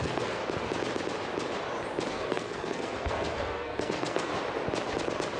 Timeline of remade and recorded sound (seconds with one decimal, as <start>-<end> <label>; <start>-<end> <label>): 0.0-0.4 remade; 0.4-2.1 recorded; 2.1-4.3 remade; 4.3-5.4 recorded